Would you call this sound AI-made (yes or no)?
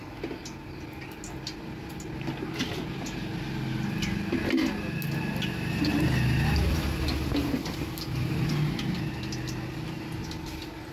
no